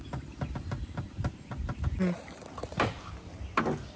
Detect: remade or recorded recorded